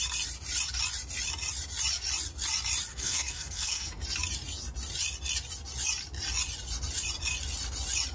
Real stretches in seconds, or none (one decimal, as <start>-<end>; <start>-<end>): 0.0-2.9; 3.9-8.1